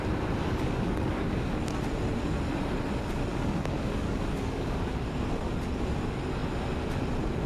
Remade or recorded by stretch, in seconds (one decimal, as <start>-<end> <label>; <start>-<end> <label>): 0.0-0.4 recorded; 0.4-1.5 remade; 1.5-3.3 recorded; 3.3-5.0 remade; 5.0-7.5 recorded